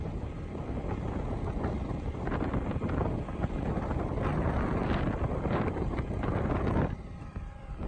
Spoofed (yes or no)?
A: yes